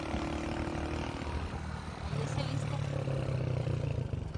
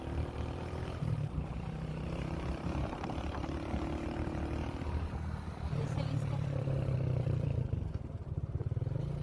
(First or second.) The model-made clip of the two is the second